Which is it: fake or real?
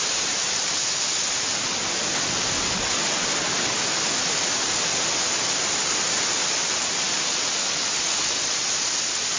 real